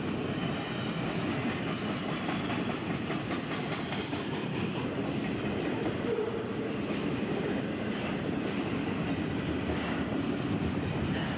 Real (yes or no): no